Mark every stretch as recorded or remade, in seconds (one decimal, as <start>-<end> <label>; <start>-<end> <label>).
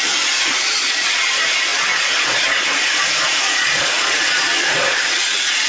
0.0-5.7 remade